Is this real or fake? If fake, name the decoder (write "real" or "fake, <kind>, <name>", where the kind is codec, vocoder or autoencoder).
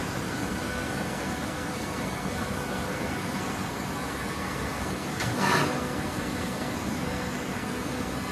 fake, codec, SNAC